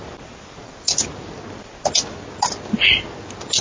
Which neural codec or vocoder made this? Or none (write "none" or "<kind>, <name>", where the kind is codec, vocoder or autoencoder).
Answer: none